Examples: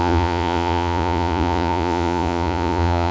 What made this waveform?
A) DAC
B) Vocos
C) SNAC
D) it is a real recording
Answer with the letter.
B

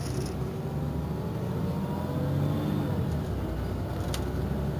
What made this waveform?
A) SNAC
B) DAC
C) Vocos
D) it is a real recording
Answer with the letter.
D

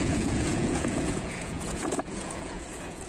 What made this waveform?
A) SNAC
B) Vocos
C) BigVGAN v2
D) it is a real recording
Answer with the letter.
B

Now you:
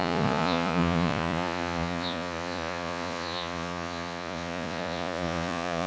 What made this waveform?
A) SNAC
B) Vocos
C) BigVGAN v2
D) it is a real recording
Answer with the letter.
B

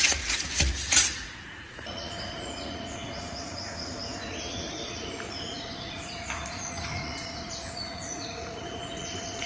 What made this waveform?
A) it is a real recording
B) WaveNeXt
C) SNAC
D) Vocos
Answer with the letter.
D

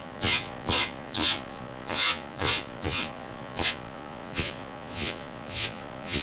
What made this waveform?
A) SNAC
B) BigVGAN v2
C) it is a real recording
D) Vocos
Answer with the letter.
D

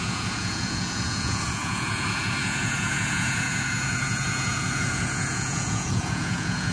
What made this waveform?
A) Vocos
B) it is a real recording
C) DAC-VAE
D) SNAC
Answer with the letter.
A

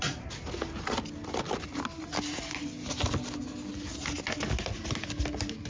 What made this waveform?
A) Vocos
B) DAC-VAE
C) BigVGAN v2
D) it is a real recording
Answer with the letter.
D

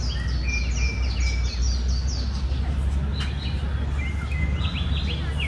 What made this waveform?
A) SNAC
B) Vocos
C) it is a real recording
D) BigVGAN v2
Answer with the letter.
C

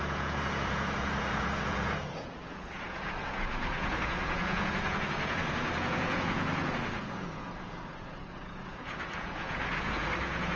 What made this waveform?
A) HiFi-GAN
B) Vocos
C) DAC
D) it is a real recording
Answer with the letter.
B